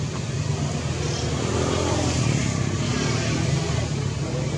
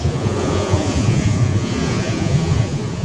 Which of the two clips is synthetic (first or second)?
second